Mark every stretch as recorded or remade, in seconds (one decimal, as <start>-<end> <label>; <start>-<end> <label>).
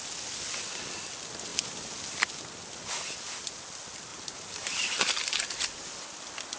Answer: 0.0-4.1 recorded; 4.1-5.1 remade; 5.1-6.6 recorded